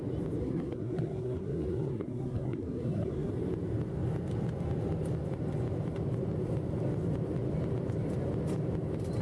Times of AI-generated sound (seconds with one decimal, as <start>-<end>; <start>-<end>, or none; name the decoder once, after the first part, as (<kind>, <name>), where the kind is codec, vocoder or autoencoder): 0.4-3.3 (codec, SNAC)